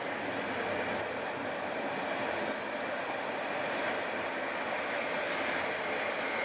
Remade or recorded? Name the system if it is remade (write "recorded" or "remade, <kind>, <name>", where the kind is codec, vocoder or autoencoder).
recorded